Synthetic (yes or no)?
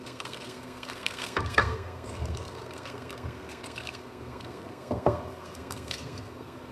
yes